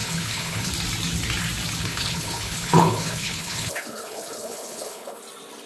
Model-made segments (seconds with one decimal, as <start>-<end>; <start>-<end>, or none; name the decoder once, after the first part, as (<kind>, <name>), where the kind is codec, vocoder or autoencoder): 0.0-0.7 (codec, HILCodec); 1.8-5.2